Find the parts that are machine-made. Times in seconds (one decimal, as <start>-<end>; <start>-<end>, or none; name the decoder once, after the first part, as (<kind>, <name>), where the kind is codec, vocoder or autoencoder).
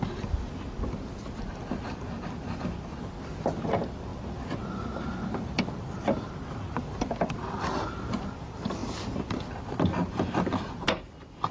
none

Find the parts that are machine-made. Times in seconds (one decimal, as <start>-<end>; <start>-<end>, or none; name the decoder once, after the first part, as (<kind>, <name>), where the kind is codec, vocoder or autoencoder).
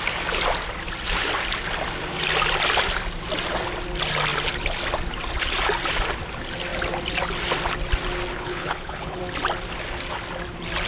8.3-9.2 (codec, HILCodec)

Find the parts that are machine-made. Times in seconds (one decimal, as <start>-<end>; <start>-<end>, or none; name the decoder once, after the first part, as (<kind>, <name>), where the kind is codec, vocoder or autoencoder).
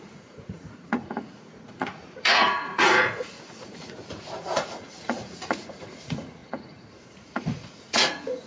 0.0-8.5 (vocoder, Vocos)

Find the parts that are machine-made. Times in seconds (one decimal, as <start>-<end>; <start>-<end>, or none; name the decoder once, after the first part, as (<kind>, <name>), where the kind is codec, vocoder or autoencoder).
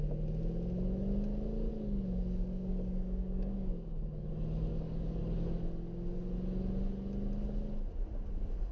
1.7-4.3 (codec, DAC); 4.7-5.2